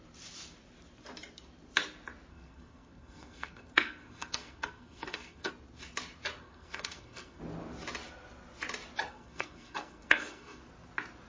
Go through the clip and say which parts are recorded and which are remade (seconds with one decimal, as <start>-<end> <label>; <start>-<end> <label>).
0.0-2.3 recorded; 2.3-5.5 remade; 5.5-6.4 recorded; 6.4-7.4 remade; 7.4-9.1 recorded; 9.1-10.6 remade; 10.6-11.3 recorded